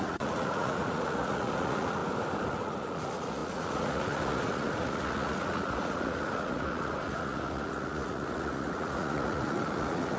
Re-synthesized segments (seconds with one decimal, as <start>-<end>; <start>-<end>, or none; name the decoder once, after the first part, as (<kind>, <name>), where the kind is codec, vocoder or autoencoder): 0.0-2.0 (vocoder, Vocos); 2.5-10.2